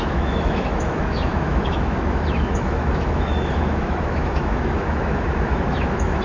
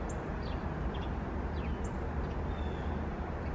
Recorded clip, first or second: second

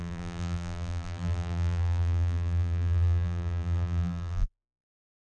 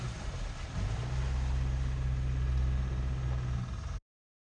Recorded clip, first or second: second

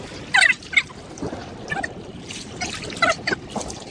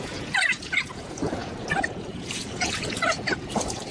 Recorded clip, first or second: first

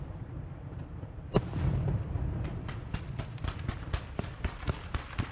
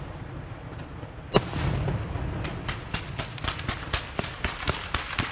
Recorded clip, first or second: second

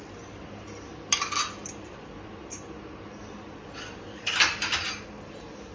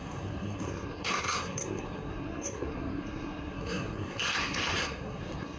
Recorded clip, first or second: first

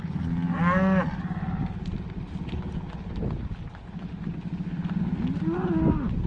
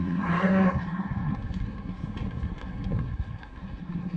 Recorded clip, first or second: first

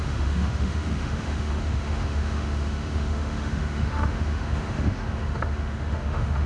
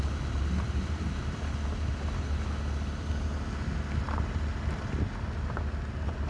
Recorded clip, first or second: second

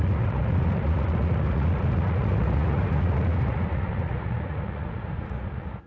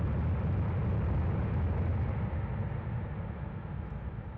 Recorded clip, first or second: second